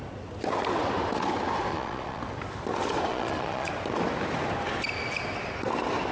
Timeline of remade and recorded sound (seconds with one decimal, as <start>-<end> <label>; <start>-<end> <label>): 0.0-1.7 recorded; 1.7-2.2 remade; 2.2-3.1 recorded; 3.1-3.7 remade; 3.7-6.1 recorded